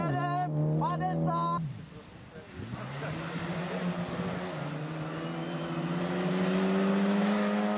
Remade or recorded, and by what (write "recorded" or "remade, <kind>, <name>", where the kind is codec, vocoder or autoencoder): recorded